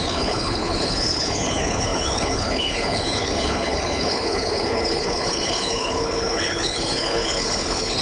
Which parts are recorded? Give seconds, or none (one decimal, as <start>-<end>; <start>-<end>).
none